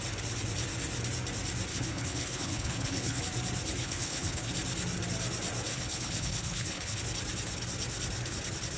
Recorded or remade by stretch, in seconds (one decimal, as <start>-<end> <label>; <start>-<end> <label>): 0.0-1.7 recorded; 1.7-3.2 remade; 3.2-3.8 recorded; 3.8-4.5 remade; 4.5-5.7 recorded; 5.7-7.0 remade; 7.0-8.8 recorded